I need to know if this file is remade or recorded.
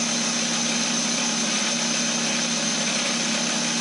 recorded